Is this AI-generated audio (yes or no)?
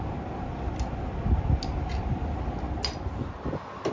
no